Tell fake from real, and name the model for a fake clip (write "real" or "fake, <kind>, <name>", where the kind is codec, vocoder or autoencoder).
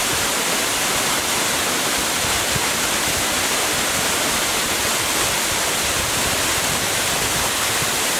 fake, vocoder, BigVGAN v2